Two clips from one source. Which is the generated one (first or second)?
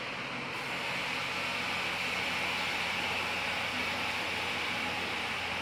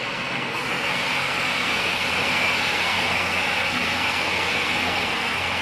second